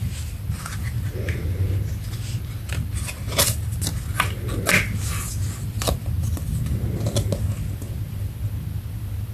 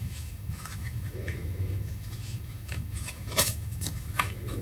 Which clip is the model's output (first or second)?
second